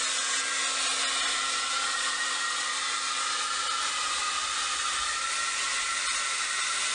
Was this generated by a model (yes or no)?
no